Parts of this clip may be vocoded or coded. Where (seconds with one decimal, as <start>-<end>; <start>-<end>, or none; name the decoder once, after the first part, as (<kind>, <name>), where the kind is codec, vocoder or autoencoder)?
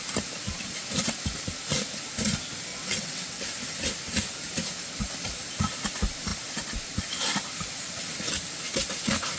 2.7-3.4 (vocoder, WaveNeXt)